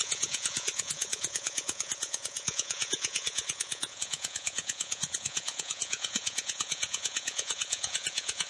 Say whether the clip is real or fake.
fake